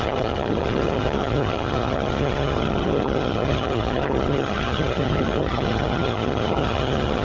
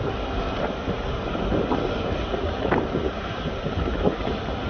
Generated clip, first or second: first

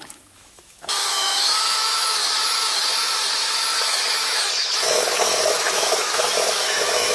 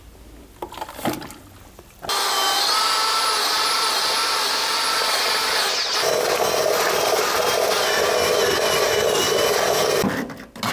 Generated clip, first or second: first